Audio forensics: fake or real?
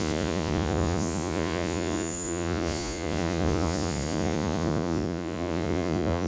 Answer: fake